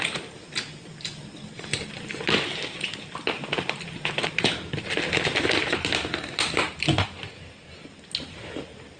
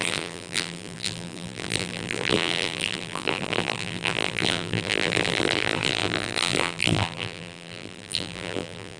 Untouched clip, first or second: first